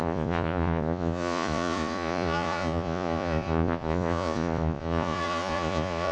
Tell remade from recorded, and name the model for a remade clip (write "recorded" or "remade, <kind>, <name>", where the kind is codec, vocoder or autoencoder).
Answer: remade, vocoder, Vocos